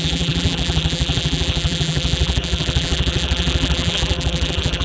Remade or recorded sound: remade